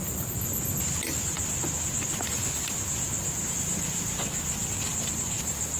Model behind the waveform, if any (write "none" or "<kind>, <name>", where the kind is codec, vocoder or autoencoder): none